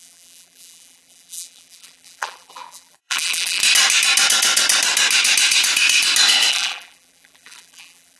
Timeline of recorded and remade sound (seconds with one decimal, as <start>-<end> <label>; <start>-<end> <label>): 0.0-3.6 remade; 3.6-6.5 recorded; 6.5-8.2 remade